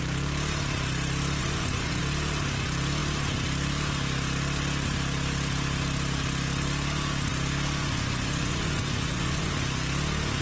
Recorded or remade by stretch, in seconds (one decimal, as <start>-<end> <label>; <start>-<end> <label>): 0.0-1.4 recorded; 1.4-2.0 remade; 2.0-7.8 recorded; 7.8-9.5 remade; 9.5-10.4 recorded